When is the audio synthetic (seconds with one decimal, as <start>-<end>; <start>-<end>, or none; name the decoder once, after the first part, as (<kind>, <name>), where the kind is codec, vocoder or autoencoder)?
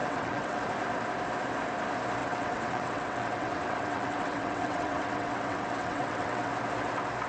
0.0-0.6 (vocoder, WaveNeXt); 2.2-6.5